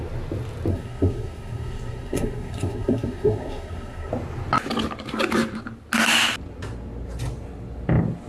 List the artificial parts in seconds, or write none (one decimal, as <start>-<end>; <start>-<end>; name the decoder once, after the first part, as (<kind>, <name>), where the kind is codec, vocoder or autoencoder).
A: 0.7-4.1 (codec, SNAC)